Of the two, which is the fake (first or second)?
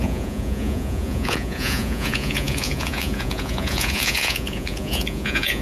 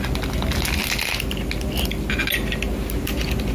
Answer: first